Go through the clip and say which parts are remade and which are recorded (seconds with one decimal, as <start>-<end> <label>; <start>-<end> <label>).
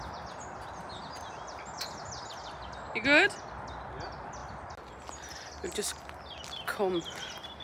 0.0-7.6 recorded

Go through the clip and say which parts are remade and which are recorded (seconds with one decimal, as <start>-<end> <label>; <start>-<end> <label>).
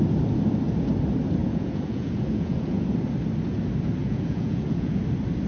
0.0-1.4 recorded; 1.4-2.8 remade; 2.8-4.0 recorded; 4.0-5.0 remade; 5.0-5.5 recorded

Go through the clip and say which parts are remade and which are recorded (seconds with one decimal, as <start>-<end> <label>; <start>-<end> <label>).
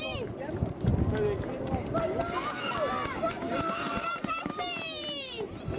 0.0-0.9 remade; 0.9-4.4 recorded; 4.4-5.8 remade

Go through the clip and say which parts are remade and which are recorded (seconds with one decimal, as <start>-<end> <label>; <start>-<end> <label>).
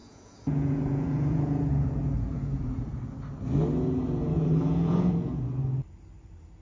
0.0-3.0 remade; 3.0-4.3 recorded; 4.3-5.6 remade; 5.6-6.6 recorded